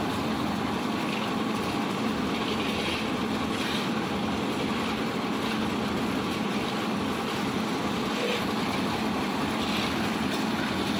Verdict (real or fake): real